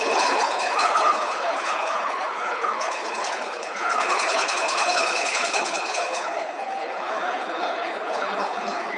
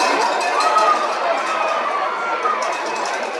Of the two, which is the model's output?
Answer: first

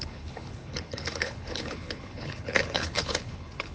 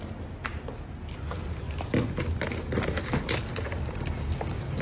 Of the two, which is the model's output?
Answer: first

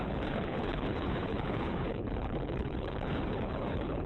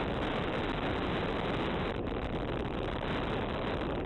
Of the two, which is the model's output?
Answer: first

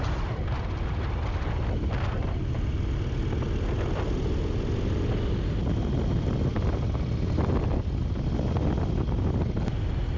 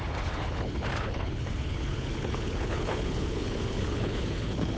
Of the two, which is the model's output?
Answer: second